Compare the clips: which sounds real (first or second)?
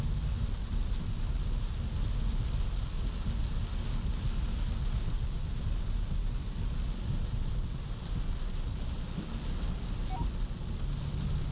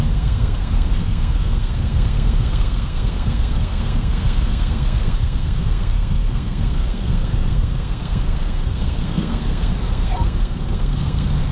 first